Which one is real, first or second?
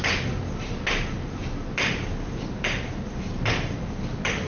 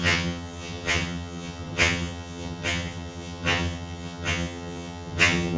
first